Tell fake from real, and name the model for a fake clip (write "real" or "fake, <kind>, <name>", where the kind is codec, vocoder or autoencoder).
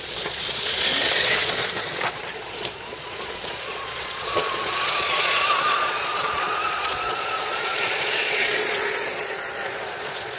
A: fake, vocoder, Vocos